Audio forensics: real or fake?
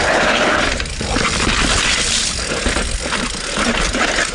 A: real